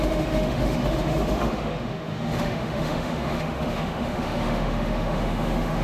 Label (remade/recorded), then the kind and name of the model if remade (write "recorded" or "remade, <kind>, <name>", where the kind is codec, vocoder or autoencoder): remade, autoencoder, DAC-VAE